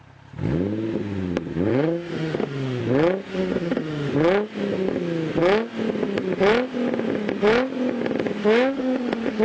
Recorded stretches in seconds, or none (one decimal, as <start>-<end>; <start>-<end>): 0.0-1.7; 2.8-3.3; 4.1-8.4